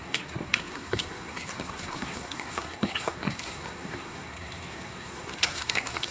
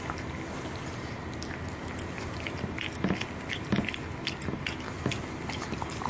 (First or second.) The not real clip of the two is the first